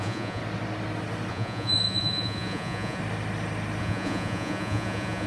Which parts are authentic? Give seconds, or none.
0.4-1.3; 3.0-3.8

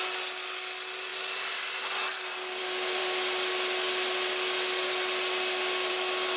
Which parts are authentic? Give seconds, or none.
0.0-6.4

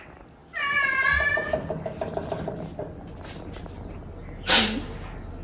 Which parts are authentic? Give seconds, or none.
0.0-5.4

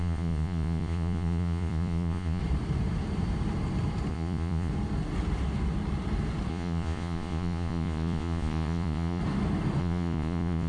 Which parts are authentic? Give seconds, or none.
2.4-4.1; 4.7-6.5; 9.2-9.8

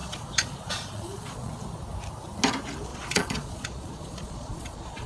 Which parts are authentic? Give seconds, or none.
1.5-2.9

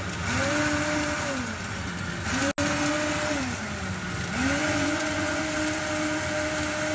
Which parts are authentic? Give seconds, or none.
0.0-4.6; 5.4-6.9

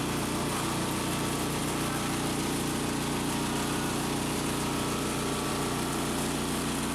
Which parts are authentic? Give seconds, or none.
0.0-6.9

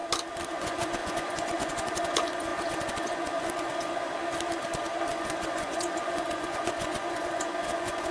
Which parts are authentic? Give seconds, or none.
0.0-0.5; 4.2-5.1